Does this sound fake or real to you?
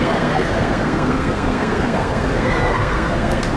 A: fake